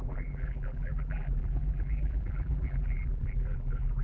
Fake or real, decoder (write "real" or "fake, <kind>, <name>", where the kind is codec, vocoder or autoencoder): fake, vocoder, BigVGAN v2